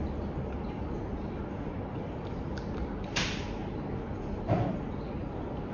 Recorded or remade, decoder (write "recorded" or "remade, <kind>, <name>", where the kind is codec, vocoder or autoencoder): recorded